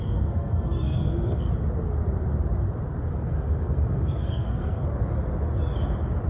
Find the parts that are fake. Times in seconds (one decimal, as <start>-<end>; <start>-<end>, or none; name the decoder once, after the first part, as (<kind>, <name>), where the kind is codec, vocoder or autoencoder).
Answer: 0.0-1.5 (codec, SNAC); 3.1-4.8